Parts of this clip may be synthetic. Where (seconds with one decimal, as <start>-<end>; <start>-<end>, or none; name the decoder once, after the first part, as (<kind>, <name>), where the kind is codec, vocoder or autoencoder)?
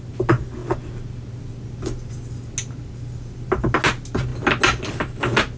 none